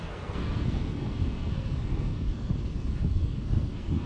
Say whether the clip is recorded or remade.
remade